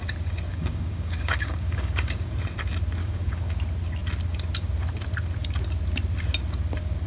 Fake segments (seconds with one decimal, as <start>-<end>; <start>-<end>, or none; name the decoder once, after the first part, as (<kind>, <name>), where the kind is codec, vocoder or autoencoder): 0.5-2.3 (codec, DAC); 3.0-3.5